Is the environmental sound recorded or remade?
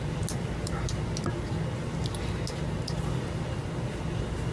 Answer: recorded